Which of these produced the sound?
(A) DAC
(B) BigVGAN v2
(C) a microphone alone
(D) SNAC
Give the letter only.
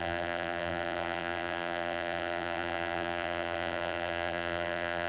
B